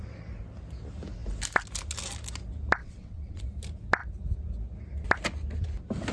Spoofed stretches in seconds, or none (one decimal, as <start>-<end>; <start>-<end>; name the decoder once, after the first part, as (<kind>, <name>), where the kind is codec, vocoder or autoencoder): 2.8-3.4 (vocoder, WaveNeXt)